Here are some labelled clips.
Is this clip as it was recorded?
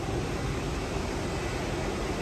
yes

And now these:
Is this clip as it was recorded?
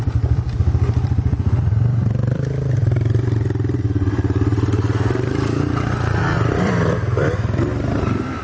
no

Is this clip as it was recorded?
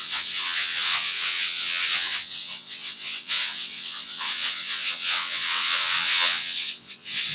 no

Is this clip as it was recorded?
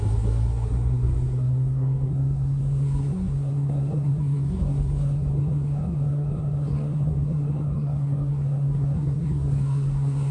no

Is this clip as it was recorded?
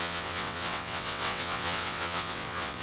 no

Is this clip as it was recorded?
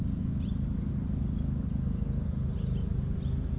yes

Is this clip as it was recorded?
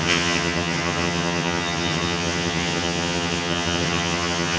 no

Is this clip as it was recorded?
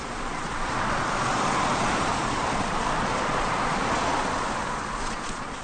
no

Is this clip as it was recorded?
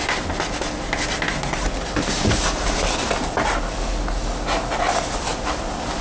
yes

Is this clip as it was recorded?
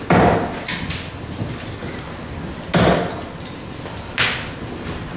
yes